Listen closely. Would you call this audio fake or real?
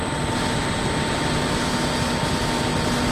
real